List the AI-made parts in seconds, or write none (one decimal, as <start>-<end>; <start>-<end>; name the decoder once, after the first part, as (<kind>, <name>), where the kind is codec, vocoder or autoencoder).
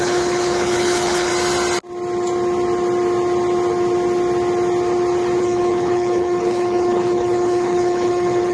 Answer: 0.0-1.3 (codec, HILCodec); 5.4-8.5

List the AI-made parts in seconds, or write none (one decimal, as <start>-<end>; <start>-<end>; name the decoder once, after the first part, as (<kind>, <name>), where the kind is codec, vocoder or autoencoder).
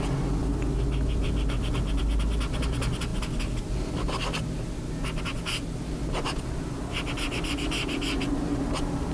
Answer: none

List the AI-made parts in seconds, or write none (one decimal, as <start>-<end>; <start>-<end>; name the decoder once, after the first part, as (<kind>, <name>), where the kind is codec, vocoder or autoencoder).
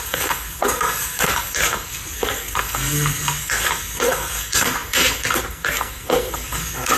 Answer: 0.0-7.0 (codec, SNAC)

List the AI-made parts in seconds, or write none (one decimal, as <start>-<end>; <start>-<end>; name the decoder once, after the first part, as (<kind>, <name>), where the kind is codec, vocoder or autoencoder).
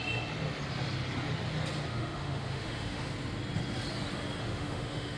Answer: 1.9-3.1 (autoencoder, DAC-VAE); 4.4-5.2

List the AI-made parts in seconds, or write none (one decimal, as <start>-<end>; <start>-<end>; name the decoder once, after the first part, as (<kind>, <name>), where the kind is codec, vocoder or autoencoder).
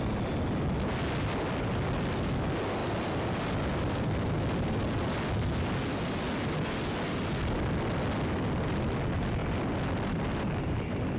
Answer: none